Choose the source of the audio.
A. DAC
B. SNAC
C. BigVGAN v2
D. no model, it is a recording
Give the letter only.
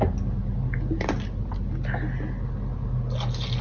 D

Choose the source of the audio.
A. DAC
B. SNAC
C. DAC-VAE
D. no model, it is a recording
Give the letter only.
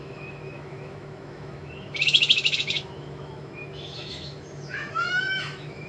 C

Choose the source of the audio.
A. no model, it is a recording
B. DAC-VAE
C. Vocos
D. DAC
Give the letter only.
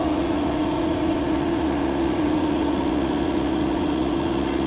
C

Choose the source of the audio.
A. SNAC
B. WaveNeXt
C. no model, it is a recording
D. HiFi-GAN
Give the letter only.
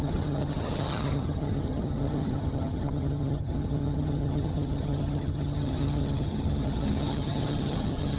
D